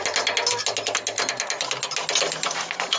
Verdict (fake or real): real